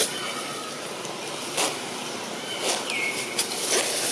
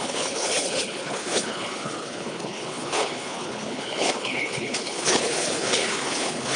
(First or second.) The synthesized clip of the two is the second